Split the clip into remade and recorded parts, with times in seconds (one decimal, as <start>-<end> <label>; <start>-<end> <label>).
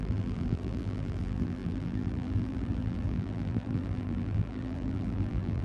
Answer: 0.0-5.6 remade